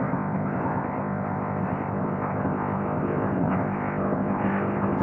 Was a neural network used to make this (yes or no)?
yes